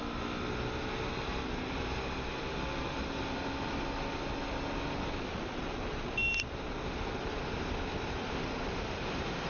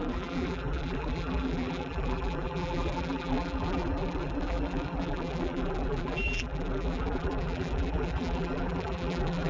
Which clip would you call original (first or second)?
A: first